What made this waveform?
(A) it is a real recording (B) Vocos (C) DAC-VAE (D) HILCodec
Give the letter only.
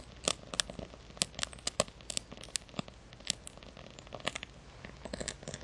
A